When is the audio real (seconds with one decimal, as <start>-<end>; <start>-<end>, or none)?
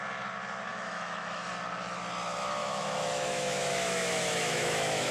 0.0-0.7; 1.5-2.6